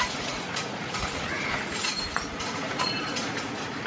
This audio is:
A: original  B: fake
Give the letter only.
B